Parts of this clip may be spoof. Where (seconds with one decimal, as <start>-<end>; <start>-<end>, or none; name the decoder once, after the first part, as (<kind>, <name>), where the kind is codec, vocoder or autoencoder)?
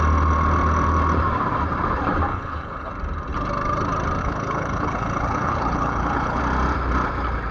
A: 2.3-2.9 (codec, HILCodec); 4.2-6.4